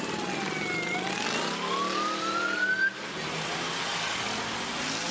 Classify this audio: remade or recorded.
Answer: recorded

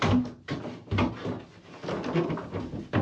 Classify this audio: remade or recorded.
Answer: recorded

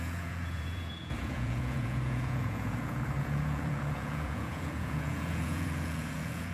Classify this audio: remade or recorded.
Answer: remade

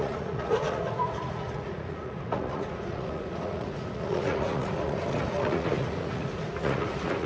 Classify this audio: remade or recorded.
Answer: remade